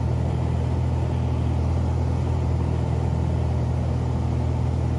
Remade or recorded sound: recorded